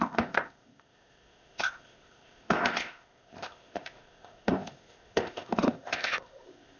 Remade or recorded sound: remade